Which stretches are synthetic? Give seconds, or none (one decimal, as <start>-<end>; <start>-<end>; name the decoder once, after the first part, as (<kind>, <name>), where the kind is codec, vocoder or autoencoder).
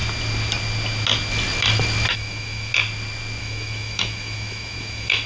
2.1-2.7 (autoencoder, DAC-VAE); 3.4-5.3